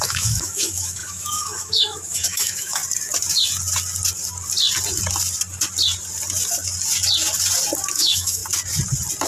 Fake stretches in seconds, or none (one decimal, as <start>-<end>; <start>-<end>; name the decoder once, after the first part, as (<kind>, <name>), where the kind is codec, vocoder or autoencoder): 0.0-2.8 (autoencoder, DAC-VAE); 7.9-8.4